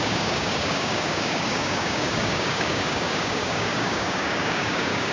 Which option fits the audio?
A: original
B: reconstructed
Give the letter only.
B